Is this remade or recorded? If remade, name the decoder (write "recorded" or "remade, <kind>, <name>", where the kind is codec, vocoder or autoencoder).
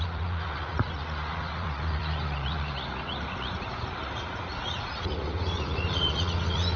remade, vocoder, Vocos